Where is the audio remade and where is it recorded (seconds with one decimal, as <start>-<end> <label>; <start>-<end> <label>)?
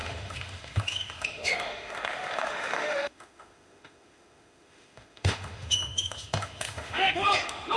0.0-7.8 remade